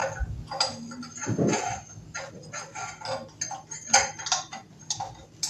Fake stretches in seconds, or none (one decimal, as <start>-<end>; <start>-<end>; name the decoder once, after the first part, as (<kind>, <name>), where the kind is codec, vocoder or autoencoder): none

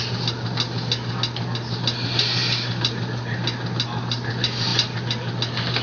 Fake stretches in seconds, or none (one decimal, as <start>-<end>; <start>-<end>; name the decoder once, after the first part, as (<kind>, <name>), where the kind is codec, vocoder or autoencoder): none

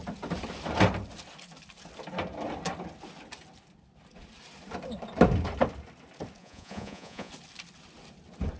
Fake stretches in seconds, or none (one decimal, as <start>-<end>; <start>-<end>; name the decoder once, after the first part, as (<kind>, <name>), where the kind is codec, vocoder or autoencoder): 6.4-7.3 (vocoder, Vocos)

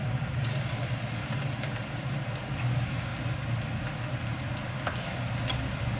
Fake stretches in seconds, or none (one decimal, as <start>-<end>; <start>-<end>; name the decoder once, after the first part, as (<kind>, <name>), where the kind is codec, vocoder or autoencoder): none

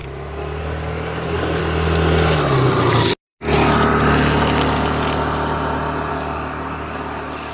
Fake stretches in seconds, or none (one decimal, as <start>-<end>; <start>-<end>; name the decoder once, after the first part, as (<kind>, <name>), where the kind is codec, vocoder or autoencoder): 0.6-1.6 (codec, DAC); 6.1-7.5